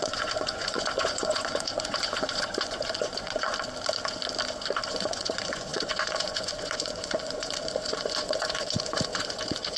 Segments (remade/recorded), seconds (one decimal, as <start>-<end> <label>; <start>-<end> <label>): 0.0-3.5 remade; 3.5-4.9 recorded; 4.9-9.8 remade

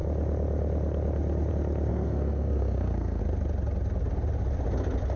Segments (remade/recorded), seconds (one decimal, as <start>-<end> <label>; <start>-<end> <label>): 0.0-1.9 recorded; 1.9-3.2 remade; 3.2-5.2 recorded

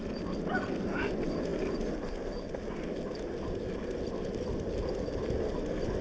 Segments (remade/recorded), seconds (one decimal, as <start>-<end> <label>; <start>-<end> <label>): 0.0-6.0 recorded

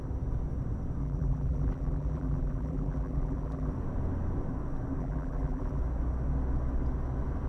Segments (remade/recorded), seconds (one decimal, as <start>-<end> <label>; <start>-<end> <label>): 0.0-1.0 recorded; 1.0-3.7 remade; 3.7-5.0 recorded; 5.0-5.8 remade; 5.8-7.5 recorded

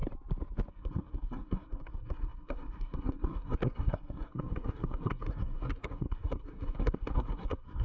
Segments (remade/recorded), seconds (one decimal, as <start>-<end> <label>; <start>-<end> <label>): 0.0-0.7 recorded; 0.7-7.8 remade

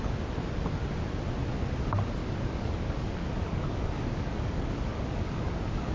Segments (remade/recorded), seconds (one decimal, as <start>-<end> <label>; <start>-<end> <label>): 0.0-2.2 recorded; 2.2-5.9 remade

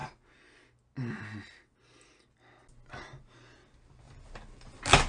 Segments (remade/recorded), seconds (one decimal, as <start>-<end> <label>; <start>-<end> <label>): 0.0-5.1 recorded

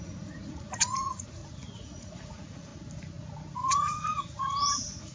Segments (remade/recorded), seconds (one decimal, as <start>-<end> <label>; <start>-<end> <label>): 0.0-1.4 remade; 1.4-2.0 recorded; 2.0-2.7 remade; 2.7-3.5 recorded; 3.5-5.1 remade